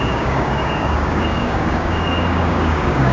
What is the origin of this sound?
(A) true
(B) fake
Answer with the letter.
B